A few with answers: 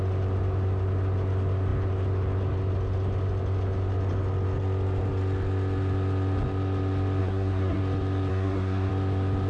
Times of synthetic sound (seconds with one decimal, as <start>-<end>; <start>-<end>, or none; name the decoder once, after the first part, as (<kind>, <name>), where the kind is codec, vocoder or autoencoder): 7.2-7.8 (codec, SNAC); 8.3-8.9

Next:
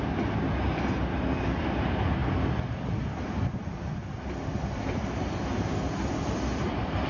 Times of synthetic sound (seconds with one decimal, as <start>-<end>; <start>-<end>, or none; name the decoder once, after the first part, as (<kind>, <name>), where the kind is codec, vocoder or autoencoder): none

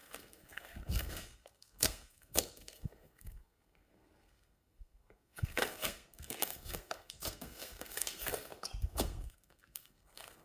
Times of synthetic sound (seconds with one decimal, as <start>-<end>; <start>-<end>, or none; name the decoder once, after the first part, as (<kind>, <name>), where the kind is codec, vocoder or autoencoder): 0.0-10.4 (codec, SNAC)

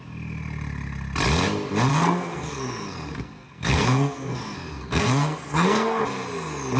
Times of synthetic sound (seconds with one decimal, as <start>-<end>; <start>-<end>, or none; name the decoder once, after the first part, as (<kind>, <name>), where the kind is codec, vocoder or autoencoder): 1.9-6.0 (codec, SNAC)